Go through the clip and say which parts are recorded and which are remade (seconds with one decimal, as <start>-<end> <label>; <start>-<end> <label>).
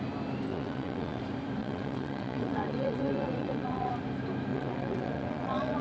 0.0-0.5 recorded; 0.5-1.2 remade; 1.2-1.6 recorded; 1.6-3.9 remade; 3.9-4.5 recorded; 4.5-5.8 remade